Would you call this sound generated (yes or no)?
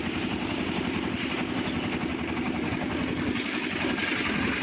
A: no